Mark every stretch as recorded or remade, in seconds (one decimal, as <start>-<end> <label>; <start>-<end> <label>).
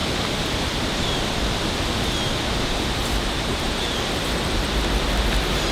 0.0-3.0 recorded; 3.0-4.1 remade; 4.1-5.7 recorded